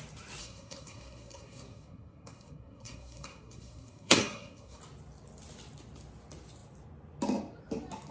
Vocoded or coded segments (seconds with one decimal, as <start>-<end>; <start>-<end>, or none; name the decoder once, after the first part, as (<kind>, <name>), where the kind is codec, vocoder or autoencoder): 0.4-4.8 (codec, SNAC)